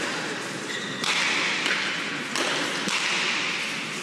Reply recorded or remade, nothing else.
recorded